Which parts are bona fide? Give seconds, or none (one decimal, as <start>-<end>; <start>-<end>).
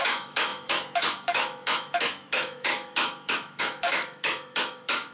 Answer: none